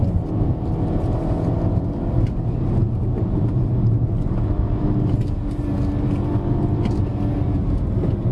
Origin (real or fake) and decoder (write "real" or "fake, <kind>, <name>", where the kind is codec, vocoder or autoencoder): real